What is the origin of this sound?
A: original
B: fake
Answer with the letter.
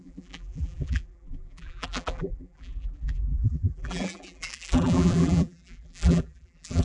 B